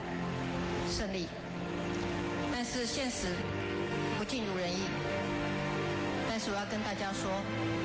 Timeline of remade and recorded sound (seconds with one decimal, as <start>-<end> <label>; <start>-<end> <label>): 0.0-3.6 recorded; 3.6-4.2 remade; 4.2-7.8 recorded